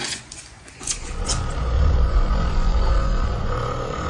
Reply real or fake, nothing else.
fake